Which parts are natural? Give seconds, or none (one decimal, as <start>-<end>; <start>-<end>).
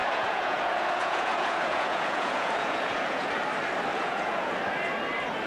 3.3-3.9; 4.5-5.5